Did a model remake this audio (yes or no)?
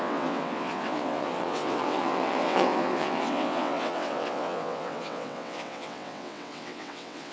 yes